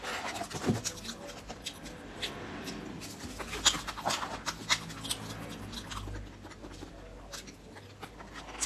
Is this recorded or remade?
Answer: recorded